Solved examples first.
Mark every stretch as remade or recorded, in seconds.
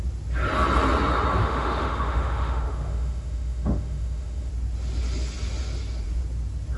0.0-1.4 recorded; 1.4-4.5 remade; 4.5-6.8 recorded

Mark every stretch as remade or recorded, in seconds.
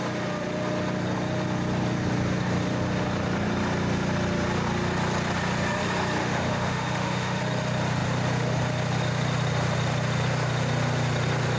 0.0-6.2 recorded; 6.2-7.4 remade; 7.4-11.6 recorded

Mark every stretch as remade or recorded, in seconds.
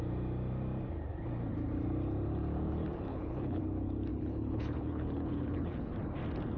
0.0-3.1 recorded; 3.1-3.6 remade; 3.6-4.1 recorded; 4.1-5.9 remade; 5.9-6.6 recorded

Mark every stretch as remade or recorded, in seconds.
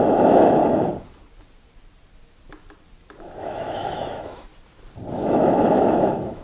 0.0-0.6 remade; 0.6-3.2 recorded; 3.2-4.5 remade; 4.5-5.1 recorded; 5.1-6.4 remade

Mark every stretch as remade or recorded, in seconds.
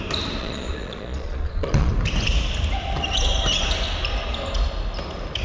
0.0-0.4 recorded; 0.4-1.9 remade; 1.9-5.4 recorded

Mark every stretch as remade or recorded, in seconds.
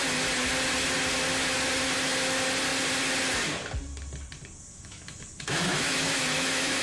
0.0-4.7 recorded; 4.7-6.8 remade